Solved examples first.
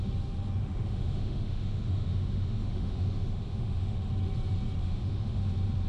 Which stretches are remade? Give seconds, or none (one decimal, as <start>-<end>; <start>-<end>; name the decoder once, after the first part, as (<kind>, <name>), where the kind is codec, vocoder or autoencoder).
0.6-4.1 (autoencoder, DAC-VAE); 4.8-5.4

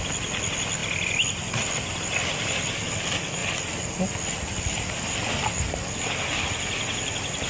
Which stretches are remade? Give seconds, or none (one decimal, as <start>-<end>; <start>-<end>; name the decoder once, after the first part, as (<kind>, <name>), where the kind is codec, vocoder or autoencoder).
none

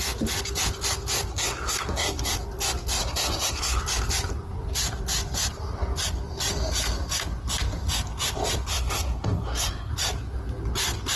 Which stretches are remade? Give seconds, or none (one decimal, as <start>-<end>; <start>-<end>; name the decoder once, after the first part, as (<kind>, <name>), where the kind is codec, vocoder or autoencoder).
1.3-2.3 (codec, SNAC); 3.0-3.8; 8.7-9.9

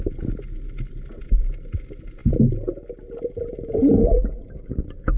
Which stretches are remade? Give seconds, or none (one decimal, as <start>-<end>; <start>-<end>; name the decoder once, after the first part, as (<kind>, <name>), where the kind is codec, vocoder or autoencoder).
none